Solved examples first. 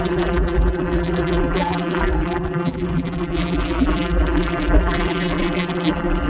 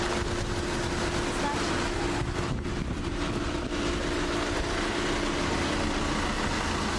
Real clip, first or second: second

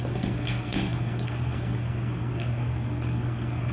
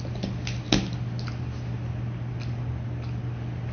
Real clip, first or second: second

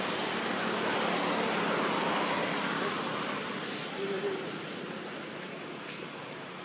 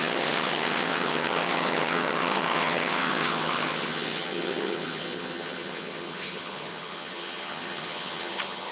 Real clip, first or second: first